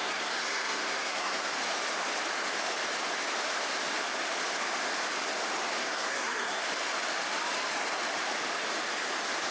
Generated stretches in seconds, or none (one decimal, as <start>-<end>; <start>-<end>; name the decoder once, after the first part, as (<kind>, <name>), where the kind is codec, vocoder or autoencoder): 0.0-1.5 (codec, SNAC); 5.8-6.6